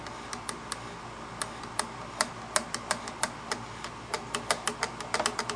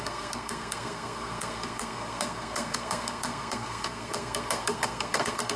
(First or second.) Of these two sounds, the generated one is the second